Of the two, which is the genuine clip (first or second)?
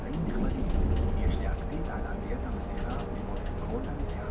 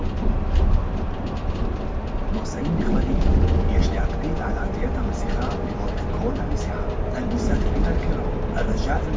first